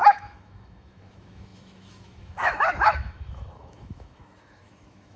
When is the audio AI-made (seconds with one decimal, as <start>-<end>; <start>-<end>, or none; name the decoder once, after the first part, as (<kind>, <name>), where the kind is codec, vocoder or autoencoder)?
0.0-5.2 (autoencoder, DAC-VAE)